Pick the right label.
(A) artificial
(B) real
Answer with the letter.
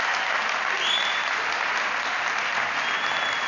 B